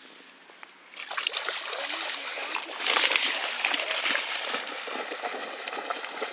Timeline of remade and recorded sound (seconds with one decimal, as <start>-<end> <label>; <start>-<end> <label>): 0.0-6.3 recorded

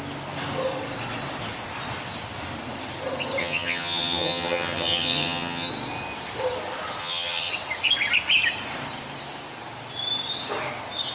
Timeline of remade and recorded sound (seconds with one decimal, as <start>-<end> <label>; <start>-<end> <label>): 0.0-3.4 recorded; 3.4-5.7 remade; 5.7-7.0 recorded; 7.0-7.5 remade; 7.5-11.1 recorded

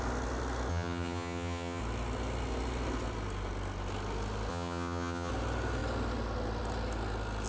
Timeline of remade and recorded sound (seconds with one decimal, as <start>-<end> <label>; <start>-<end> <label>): 0.0-0.7 recorded; 0.7-1.8 remade; 1.8-4.5 recorded; 4.5-5.3 remade; 5.3-7.5 recorded